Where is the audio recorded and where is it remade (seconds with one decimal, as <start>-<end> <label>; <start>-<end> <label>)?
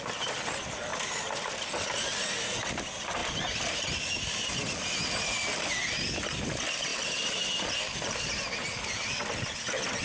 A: 0.0-10.0 recorded